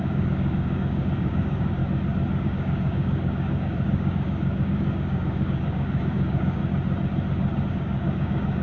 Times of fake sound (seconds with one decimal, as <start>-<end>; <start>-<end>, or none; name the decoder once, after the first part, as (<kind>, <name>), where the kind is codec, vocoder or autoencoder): 0.0-1.8 (codec, DAC); 2.4-6.6; 7.7-8.6